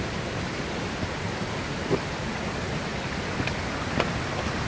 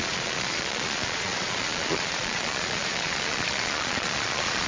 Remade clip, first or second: second